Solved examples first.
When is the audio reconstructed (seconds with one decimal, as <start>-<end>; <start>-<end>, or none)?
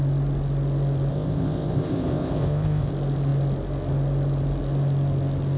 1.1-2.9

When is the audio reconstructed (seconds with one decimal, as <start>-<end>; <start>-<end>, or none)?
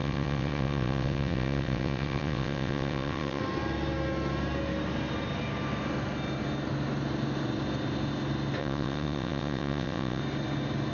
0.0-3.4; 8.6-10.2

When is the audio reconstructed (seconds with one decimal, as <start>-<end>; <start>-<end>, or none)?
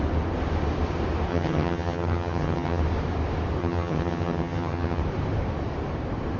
1.3-2.8; 3.6-5.0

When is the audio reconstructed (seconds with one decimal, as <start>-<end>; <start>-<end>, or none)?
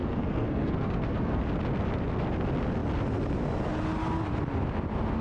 0.0-1.4